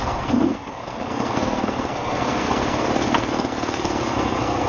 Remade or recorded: remade